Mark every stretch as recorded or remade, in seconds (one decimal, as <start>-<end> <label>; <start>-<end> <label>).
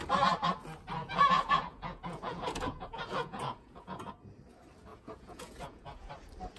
0.0-1.0 recorded; 1.0-4.1 remade; 4.1-4.9 recorded; 4.9-6.1 remade; 6.1-6.6 recorded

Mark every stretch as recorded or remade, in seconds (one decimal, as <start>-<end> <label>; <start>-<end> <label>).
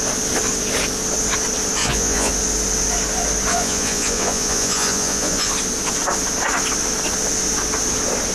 0.0-1.8 recorded; 1.8-2.3 remade; 2.3-3.5 recorded; 3.5-5.5 remade; 5.5-8.3 recorded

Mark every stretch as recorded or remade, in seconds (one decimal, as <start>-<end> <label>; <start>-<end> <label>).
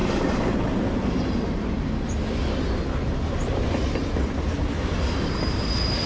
0.0-6.1 recorded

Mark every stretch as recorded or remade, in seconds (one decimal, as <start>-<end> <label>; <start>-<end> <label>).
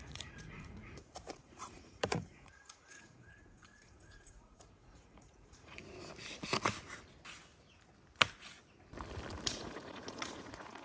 0.0-5.8 remade; 5.8-9.5 recorded; 9.5-10.8 remade